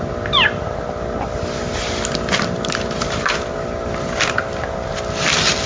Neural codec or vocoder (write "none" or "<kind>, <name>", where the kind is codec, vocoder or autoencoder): none